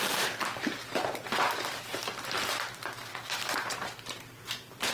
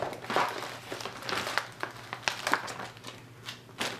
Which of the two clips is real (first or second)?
second